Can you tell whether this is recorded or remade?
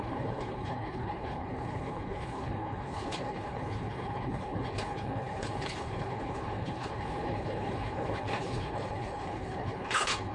remade